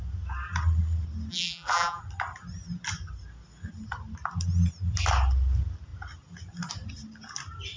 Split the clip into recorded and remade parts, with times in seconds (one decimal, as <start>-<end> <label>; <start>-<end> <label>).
0.0-1.3 recorded; 1.3-2.0 remade; 2.0-7.8 recorded